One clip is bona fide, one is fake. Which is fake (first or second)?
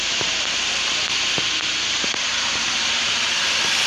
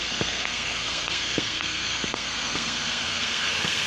second